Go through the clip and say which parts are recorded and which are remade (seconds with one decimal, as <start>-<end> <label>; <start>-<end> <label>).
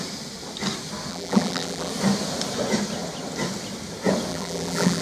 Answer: 0.0-1.1 recorded; 1.1-1.9 remade; 1.9-4.3 recorded; 4.3-5.0 remade